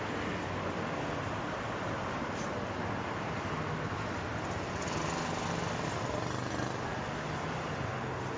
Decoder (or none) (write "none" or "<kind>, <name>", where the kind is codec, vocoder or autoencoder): none